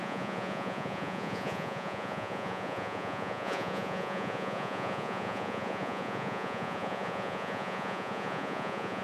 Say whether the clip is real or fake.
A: fake